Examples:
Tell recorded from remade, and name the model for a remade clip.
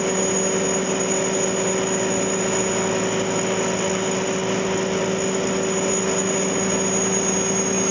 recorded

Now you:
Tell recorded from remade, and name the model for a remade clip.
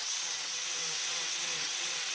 remade, vocoder, WaveNeXt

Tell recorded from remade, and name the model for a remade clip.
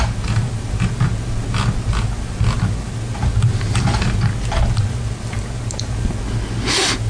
recorded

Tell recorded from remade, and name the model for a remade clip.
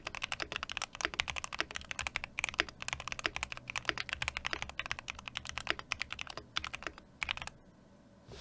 recorded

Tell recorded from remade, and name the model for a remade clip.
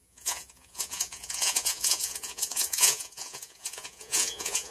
remade, vocoder, Vocos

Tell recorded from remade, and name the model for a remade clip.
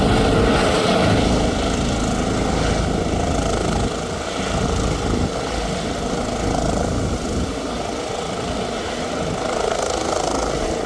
recorded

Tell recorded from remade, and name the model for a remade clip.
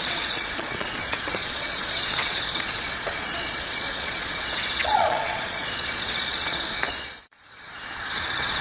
remade, vocoder, Vocos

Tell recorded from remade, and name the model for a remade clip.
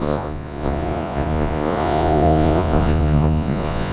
remade, vocoder, Vocos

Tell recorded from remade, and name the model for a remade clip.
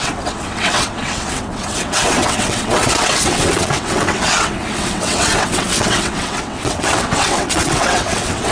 remade, vocoder, WaveNeXt